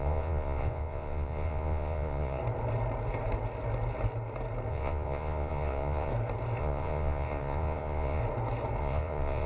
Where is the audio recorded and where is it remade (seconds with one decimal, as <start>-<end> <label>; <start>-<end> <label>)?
0.0-2.4 remade; 2.4-4.7 recorded; 4.7-6.1 remade; 6.1-6.6 recorded; 6.6-8.2 remade; 8.2-8.8 recorded; 8.8-9.5 remade